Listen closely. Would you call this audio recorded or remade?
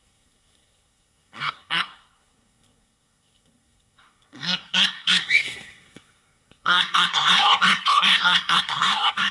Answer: remade